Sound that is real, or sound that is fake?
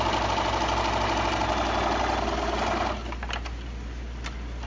real